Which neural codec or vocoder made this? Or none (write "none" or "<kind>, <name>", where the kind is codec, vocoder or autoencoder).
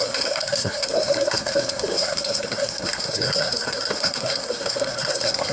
codec, SNAC